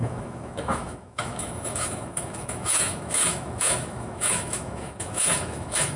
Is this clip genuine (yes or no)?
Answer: no